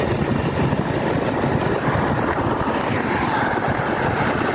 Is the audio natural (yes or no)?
yes